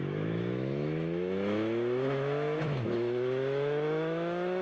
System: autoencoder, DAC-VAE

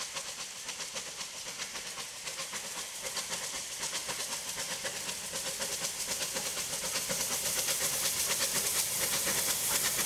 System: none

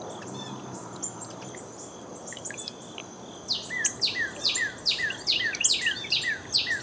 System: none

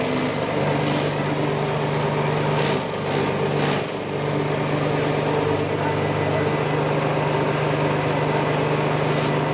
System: none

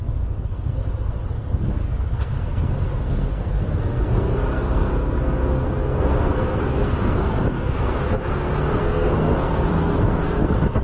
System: codec, SNAC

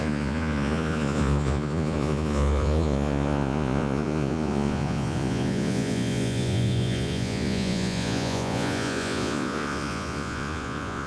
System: vocoder, Vocos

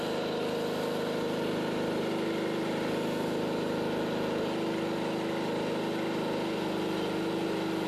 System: none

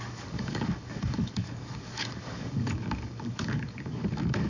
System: codec, DAC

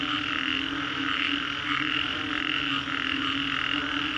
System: none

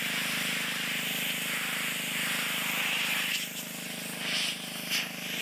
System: none